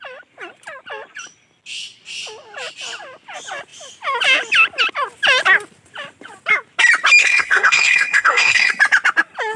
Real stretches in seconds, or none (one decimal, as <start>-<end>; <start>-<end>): 0.0-7.2; 8.7-9.6